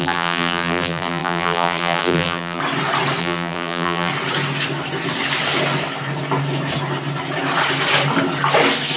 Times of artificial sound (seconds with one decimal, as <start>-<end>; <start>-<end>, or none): 0.0-2.6; 3.2-4.1